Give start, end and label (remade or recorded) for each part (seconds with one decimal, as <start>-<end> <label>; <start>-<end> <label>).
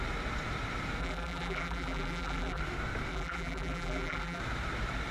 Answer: 0.0-1.0 recorded; 1.0-2.6 remade; 2.6-3.1 recorded; 3.1-4.4 remade; 4.4-5.1 recorded